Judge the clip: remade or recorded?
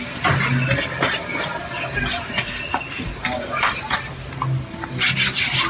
recorded